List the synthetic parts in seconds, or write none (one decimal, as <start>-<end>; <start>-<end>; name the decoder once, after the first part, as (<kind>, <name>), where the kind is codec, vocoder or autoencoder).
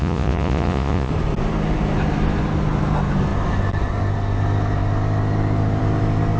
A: 0.0-1.1 (vocoder, Vocos)